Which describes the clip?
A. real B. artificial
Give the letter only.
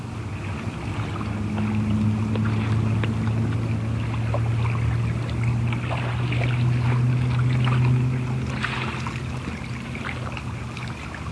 A